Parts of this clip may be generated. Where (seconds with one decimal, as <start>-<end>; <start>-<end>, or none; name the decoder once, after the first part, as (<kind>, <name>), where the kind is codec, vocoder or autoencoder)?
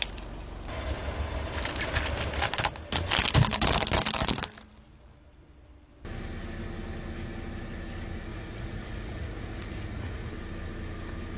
8.3-10.3 (vocoder, Vocos)